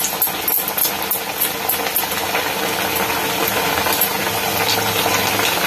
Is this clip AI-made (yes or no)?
no